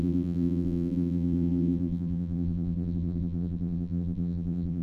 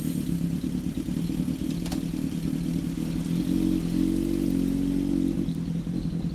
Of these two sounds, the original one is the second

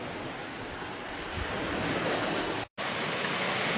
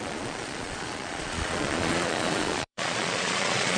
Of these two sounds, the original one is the first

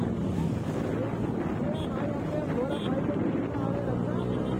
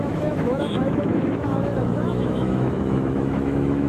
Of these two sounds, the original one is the first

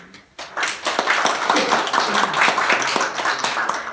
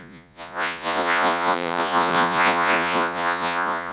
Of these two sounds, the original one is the first